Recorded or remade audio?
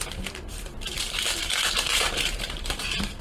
remade